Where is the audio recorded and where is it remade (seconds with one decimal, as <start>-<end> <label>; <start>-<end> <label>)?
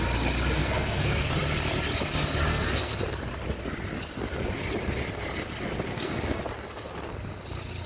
0.0-0.6 recorded; 0.6-1.3 remade; 1.3-2.5 recorded; 2.5-3.0 remade; 3.0-5.9 recorded; 5.9-6.4 remade; 6.4-7.9 recorded